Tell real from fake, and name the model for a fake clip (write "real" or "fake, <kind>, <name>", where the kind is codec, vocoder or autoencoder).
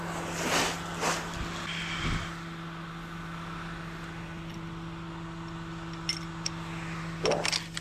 real